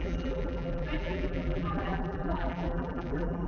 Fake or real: fake